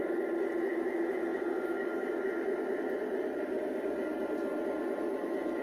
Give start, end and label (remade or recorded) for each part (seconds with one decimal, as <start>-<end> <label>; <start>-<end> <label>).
0.0-5.6 recorded